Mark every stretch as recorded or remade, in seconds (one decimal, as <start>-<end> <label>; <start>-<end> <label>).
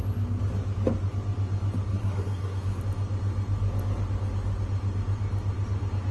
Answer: 0.0-1.9 recorded; 1.9-2.8 remade; 2.8-6.1 recorded